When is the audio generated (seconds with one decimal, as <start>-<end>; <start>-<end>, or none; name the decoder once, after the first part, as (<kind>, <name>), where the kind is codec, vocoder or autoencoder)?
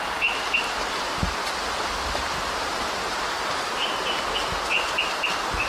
0.0-1.4 (vocoder, BigVGAN v2); 1.9-2.7